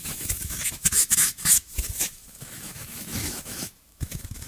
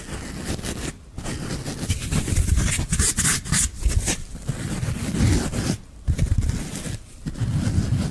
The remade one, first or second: first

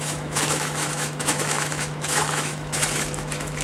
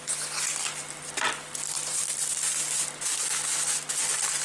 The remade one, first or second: first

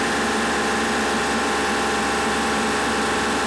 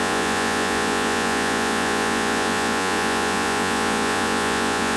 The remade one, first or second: second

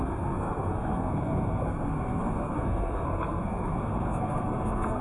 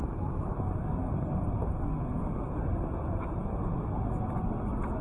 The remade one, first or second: first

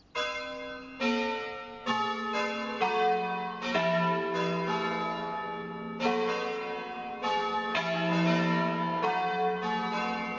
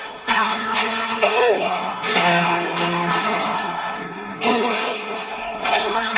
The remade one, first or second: second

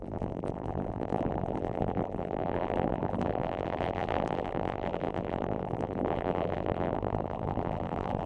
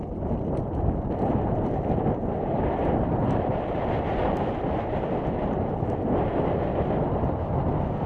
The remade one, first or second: first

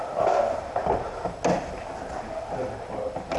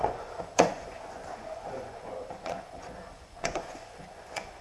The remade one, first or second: second